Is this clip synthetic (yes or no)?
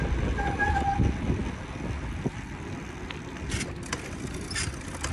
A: no